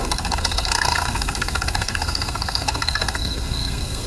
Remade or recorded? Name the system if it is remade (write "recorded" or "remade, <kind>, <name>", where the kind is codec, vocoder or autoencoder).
remade, codec, SNAC